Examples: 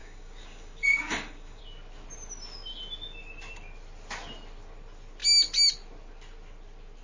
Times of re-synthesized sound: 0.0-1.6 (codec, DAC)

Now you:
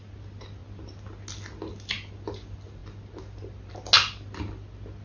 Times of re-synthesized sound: none

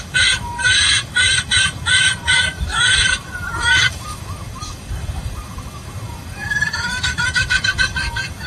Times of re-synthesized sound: 0.0-8.5 (autoencoder, DAC-VAE)

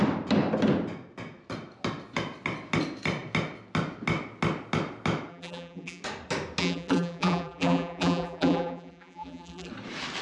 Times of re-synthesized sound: 5.3-6.0 (vocoder, BigVGAN v2); 6.6-9.7

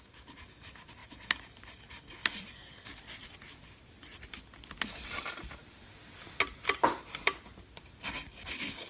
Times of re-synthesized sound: 0.0-2.9 (codec, DAC); 8.0-8.9

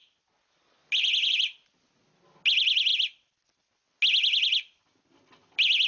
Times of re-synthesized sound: none